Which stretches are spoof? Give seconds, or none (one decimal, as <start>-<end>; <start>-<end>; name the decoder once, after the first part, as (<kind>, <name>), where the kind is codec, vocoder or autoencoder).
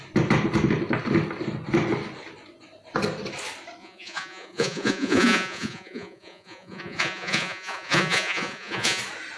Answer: 3.8-9.0 (vocoder, Vocos)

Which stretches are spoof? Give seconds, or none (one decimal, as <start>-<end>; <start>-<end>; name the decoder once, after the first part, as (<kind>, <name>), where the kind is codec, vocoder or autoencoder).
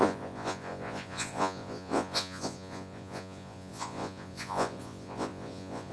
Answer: 0.0-5.9 (vocoder, Vocos)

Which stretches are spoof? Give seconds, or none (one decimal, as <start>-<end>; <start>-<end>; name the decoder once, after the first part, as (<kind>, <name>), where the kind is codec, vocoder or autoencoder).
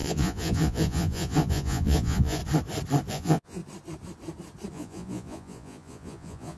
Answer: 0.0-2.4 (vocoder, Vocos); 3.1-3.6; 4.7-6.6